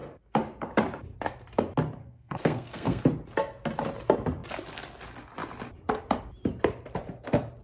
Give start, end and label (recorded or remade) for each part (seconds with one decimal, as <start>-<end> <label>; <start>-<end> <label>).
0.0-2.0 recorded; 2.0-3.0 remade; 3.0-7.6 recorded